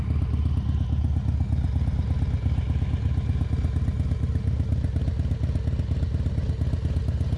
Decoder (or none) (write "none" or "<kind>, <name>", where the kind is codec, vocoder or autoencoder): none